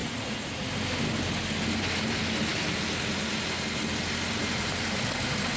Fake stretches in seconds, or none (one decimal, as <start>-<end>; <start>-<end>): 0.0-0.7